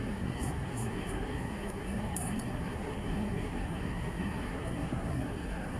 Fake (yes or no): yes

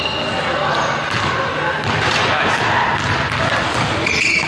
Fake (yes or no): no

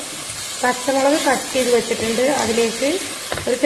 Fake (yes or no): no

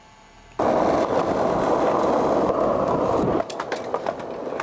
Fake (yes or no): no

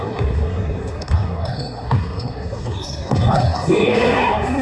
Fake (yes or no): yes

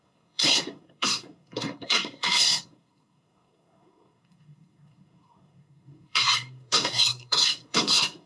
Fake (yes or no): yes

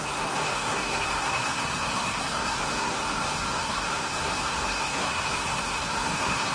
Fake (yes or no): yes